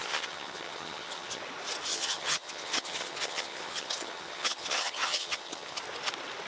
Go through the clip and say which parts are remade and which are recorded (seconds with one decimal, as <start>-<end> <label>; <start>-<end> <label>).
0.0-1.4 remade; 1.4-1.9 recorded; 1.9-5.8 remade; 5.8-6.5 recorded